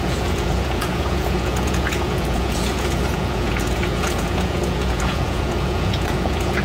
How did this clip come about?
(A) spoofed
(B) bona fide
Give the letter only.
A